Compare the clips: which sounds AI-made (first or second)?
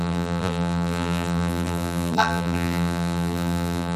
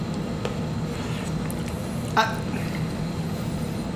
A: first